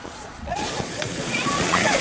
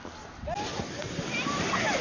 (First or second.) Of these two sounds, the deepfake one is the first